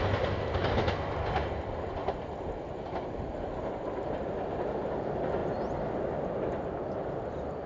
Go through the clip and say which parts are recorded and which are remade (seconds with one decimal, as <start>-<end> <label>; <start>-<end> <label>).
0.0-7.7 recorded